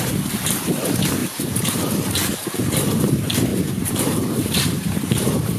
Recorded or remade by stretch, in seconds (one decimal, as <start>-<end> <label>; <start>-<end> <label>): 0.0-1.2 recorded; 1.2-1.8 remade; 1.8-2.2 recorded; 2.2-3.1 remade; 3.1-3.5 recorded; 3.5-5.0 remade; 5.0-5.6 recorded